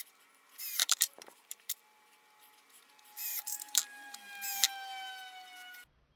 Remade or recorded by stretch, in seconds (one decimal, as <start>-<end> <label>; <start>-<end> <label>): 0.0-0.8 recorded; 0.8-1.8 remade; 1.8-3.2 recorded; 3.2-3.8 remade; 3.8-6.2 recorded